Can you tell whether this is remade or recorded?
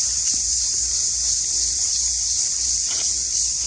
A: remade